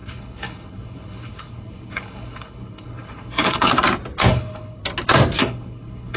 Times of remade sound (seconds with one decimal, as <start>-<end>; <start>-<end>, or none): 0.0-3.7; 4.3-4.8; 5.4-6.2